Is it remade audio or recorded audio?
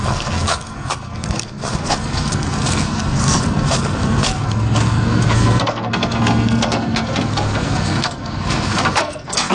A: remade